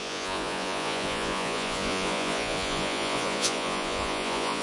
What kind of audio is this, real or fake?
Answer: fake